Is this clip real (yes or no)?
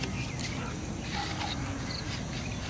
yes